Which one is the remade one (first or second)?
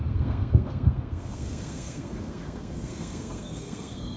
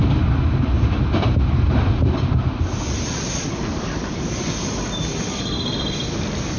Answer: first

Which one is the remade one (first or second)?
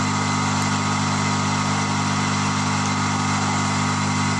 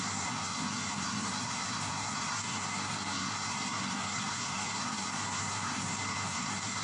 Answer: second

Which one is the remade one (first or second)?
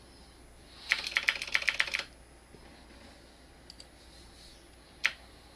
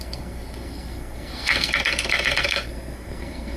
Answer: second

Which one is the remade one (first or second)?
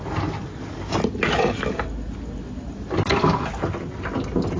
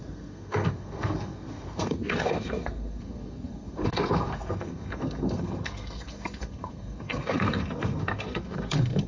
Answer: second